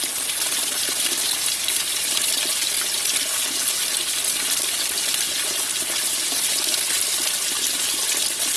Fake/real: real